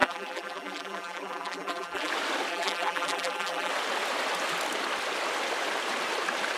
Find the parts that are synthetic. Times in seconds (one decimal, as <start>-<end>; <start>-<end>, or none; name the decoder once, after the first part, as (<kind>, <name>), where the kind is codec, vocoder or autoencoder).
0.0-2.1 (vocoder, BigVGAN v2); 2.5-3.7